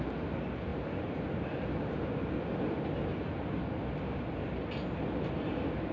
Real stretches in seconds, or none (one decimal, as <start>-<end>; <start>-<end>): 0.0-5.9

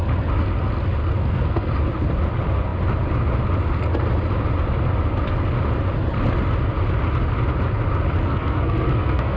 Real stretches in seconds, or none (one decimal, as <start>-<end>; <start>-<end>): 0.0-1.0; 1.7-8.2

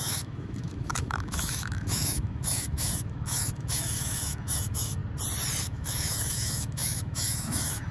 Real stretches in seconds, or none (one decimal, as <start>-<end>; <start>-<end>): 5.0-5.6

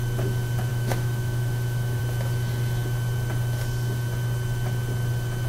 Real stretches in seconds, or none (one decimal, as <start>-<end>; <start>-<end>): 0.0-0.7; 2.0-5.5

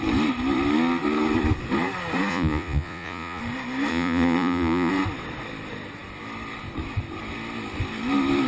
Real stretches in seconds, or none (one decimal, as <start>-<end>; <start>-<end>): 0.0-2.3; 3.4-3.9; 4.9-8.5